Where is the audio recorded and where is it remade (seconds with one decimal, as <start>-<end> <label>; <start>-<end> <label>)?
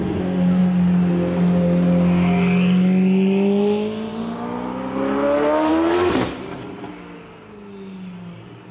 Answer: 0.0-8.7 recorded